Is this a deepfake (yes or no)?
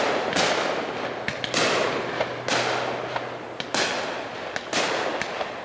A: no